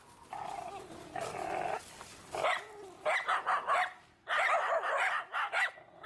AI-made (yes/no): no